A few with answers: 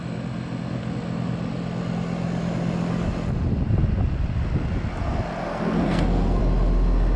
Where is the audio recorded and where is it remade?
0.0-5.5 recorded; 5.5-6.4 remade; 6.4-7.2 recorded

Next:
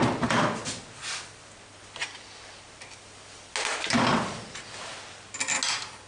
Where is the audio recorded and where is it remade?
0.0-6.1 recorded